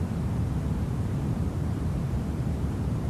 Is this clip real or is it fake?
fake